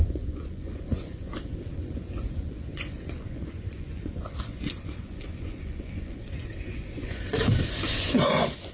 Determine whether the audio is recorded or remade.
remade